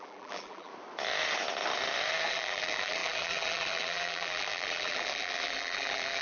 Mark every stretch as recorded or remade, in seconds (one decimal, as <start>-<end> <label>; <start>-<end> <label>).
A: 0.0-0.7 remade; 0.7-2.3 recorded; 2.3-6.2 remade